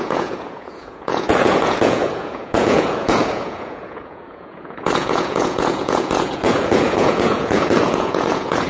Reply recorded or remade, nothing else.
remade